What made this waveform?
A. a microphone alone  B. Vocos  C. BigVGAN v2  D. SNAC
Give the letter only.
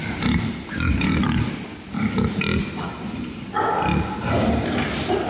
A